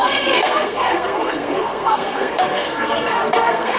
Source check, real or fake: fake